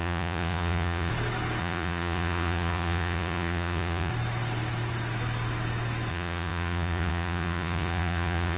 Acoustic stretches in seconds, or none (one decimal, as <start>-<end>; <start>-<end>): 1.1-1.6; 4.1-6.1